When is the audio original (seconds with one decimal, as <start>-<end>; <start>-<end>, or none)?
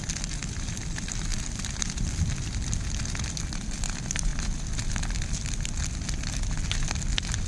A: 0.0-1.3; 1.8-7.5